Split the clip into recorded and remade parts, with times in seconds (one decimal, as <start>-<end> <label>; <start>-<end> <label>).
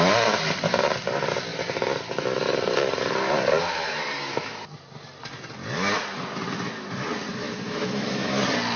0.0-7.3 recorded; 7.3-8.4 remade; 8.4-8.8 recorded